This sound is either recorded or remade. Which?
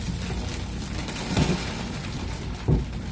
recorded